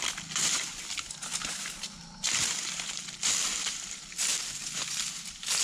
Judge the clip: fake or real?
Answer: real